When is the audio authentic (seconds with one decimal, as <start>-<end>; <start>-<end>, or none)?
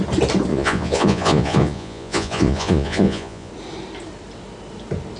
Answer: 0.0-0.5; 3.5-5.2